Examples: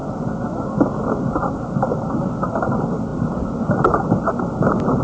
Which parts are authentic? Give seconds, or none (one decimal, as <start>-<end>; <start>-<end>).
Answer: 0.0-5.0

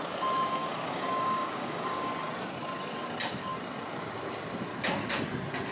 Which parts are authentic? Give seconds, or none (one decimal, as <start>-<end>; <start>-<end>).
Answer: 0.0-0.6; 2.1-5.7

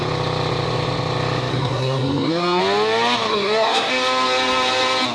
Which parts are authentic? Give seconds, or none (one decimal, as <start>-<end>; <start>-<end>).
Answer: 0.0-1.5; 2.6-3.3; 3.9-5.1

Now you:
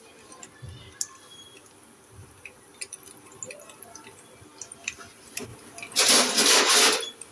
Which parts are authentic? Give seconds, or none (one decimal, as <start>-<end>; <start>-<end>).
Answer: 0.0-7.3

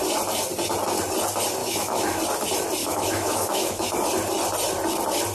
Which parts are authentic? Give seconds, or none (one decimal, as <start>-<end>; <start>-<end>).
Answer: 0.0-1.6; 2.2-2.8; 3.9-5.3

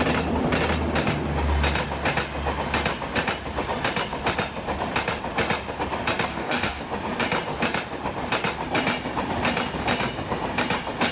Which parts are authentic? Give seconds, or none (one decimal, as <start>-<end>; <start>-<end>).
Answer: 0.0-6.3; 6.8-11.1

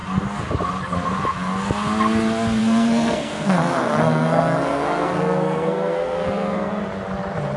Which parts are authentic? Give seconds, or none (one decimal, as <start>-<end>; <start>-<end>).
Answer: 0.0-2.6; 6.7-7.6